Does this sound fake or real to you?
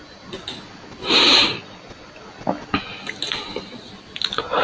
real